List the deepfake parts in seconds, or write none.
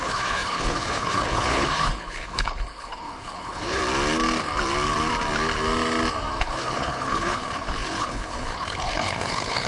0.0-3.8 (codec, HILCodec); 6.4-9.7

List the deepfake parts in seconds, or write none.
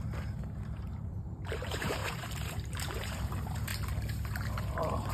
0.0-3.7 (vocoder, BigVGAN v2); 4.6-5.1